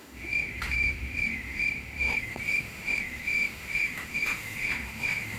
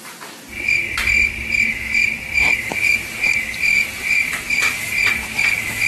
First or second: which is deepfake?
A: first